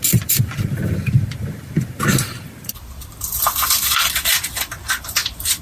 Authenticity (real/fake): fake